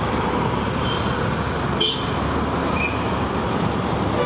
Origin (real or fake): real